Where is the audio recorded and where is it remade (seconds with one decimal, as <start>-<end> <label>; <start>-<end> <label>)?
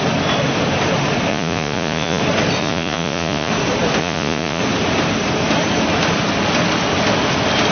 0.0-1.3 recorded; 1.3-2.2 remade; 2.2-2.6 recorded; 2.6-3.5 remade; 3.5-4.0 recorded; 4.0-4.6 remade; 4.6-7.7 recorded